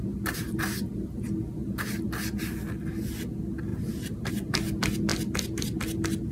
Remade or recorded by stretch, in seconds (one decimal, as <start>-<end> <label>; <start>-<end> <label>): 0.0-3.7 recorded; 3.7-4.3 remade; 4.3-6.3 recorded